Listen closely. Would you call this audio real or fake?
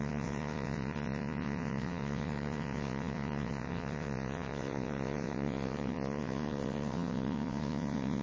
fake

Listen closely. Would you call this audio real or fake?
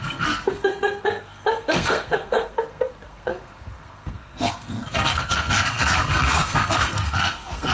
fake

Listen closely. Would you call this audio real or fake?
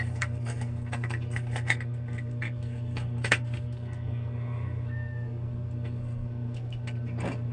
fake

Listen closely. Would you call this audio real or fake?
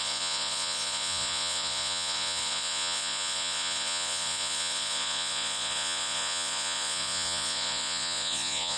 fake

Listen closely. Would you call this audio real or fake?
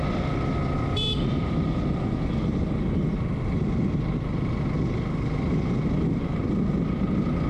real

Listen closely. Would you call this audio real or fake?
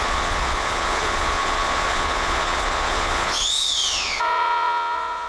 fake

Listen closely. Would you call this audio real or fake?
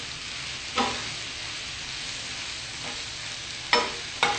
real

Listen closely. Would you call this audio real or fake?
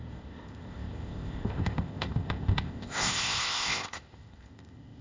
fake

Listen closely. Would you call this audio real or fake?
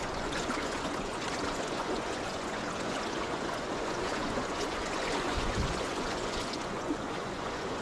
fake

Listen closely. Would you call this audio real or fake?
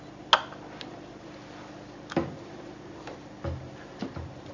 real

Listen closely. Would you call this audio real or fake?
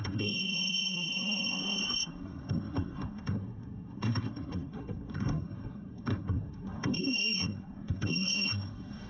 fake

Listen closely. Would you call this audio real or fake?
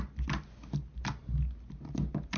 real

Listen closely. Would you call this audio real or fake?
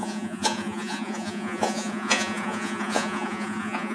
fake